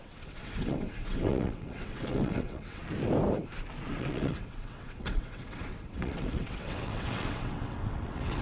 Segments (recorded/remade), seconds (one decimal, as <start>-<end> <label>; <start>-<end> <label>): 0.0-2.8 remade; 2.8-3.9 recorded; 3.9-8.4 remade